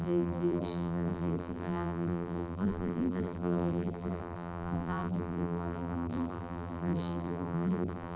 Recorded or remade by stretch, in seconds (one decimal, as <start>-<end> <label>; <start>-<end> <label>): 0.0-8.2 remade